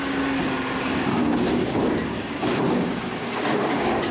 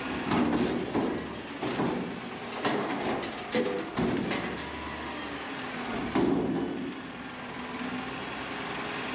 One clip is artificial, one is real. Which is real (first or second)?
second